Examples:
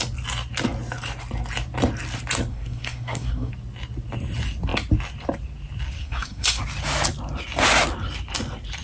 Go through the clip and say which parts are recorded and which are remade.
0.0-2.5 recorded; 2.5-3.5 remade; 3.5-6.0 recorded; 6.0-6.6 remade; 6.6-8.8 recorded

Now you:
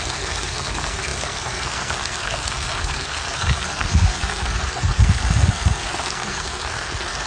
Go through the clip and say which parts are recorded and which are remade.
0.0-7.3 remade

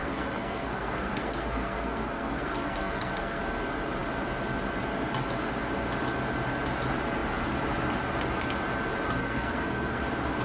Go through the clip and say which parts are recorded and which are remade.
0.0-3.4 remade; 3.4-9.2 recorded; 9.2-10.0 remade; 10.0-10.4 recorded

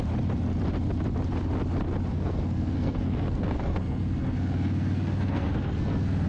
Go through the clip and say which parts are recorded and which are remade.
0.0-2.1 recorded; 2.1-6.3 remade

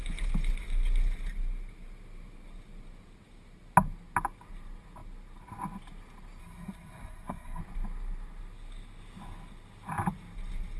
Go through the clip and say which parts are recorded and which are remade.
0.0-6.4 recorded; 6.4-7.6 remade; 7.6-10.8 recorded

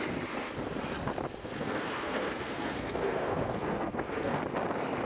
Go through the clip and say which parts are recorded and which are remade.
0.0-1.4 recorded; 1.4-4.4 remade; 4.4-5.0 recorded

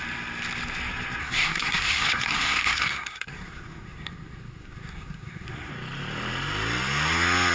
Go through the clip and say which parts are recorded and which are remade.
0.0-1.2 recorded; 1.2-5.7 remade; 5.7-7.5 recorded

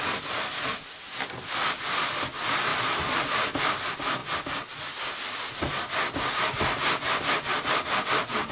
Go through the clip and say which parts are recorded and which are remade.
0.0-8.5 recorded